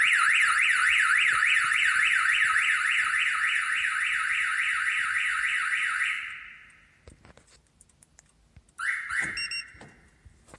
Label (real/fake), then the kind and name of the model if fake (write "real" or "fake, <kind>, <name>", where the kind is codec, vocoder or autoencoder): real